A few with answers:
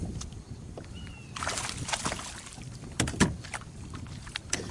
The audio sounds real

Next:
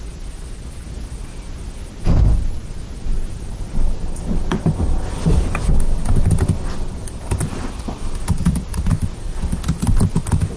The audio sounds real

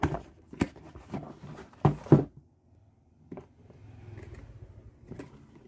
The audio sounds real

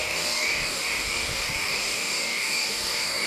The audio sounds fake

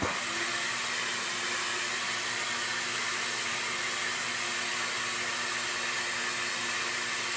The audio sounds real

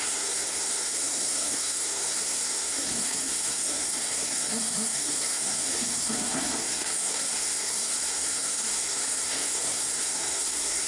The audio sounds fake